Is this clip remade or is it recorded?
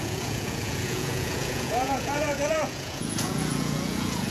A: remade